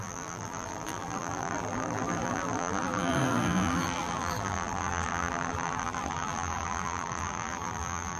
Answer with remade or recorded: remade